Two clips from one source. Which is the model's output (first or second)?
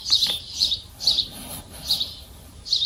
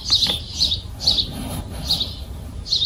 first